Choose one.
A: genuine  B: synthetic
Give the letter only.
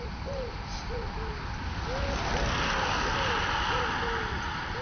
A